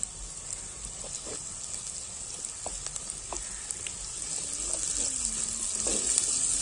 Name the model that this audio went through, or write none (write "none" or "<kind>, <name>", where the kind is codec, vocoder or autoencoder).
none